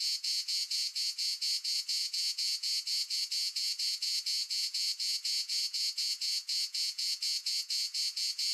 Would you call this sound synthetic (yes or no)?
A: yes